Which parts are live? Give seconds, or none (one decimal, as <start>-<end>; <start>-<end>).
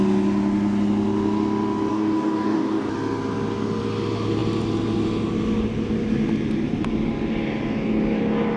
0.0-1.9; 2.9-8.6